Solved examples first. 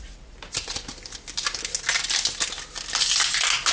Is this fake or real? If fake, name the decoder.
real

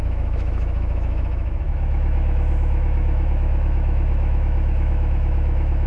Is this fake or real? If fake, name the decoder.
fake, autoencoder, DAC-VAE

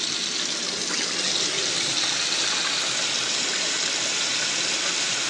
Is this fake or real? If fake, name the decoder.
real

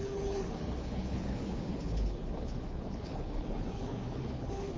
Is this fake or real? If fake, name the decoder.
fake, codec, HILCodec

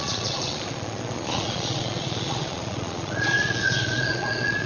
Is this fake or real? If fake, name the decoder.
fake, vocoder, Vocos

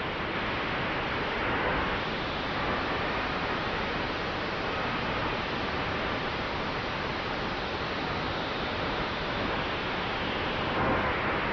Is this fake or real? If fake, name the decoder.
real